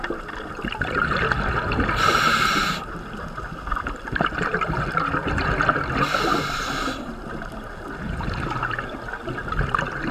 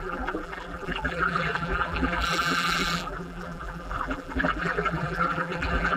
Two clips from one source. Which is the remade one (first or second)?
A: second